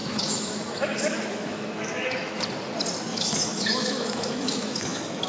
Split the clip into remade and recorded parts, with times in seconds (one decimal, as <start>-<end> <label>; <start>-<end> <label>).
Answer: 0.0-2.4 remade; 2.4-3.1 recorded; 3.1-5.3 remade